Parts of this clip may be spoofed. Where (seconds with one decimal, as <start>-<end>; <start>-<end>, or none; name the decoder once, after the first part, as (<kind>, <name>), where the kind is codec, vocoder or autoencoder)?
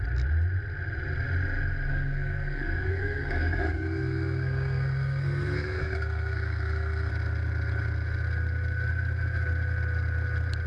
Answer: 1.9-7.1 (codec, SNAC)